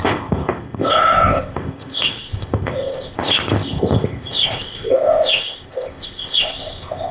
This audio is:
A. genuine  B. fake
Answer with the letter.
B